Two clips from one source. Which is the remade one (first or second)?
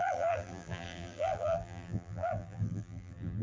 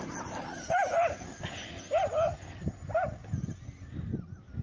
first